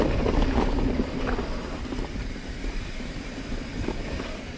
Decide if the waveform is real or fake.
real